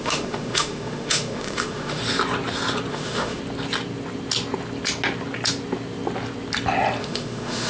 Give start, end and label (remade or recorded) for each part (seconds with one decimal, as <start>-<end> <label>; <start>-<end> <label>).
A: 0.0-2.0 remade; 2.0-2.9 recorded; 2.9-3.4 remade; 3.4-7.0 recorded; 7.0-7.7 remade

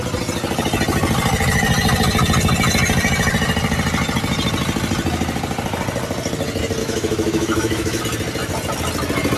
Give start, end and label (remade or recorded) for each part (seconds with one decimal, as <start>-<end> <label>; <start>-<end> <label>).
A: 0.0-6.8 recorded; 6.8-8.0 remade; 8.0-9.4 recorded

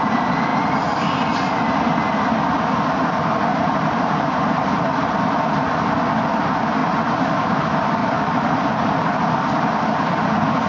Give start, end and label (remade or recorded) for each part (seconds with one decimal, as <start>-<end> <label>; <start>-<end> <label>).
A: 0.0-3.5 recorded; 3.5-5.4 remade; 5.4-6.8 recorded; 6.8-7.6 remade; 7.6-8.0 recorded; 8.0-8.9 remade; 8.9-10.7 recorded

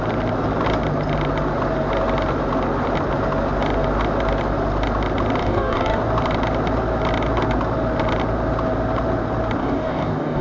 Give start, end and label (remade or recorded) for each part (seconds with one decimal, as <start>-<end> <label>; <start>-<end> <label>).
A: 0.0-5.4 recorded; 5.4-6.0 remade; 6.0-9.6 recorded; 9.6-10.4 remade

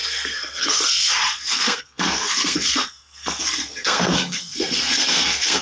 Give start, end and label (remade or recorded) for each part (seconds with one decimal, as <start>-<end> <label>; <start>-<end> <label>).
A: 0.0-5.6 remade